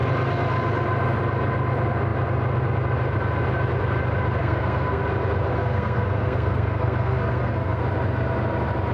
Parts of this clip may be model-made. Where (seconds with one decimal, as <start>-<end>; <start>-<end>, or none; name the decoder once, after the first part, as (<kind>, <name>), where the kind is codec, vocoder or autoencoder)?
4.4-5.0 (codec, SNAC); 5.5-7.8